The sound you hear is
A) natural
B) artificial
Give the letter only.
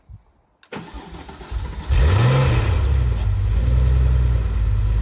A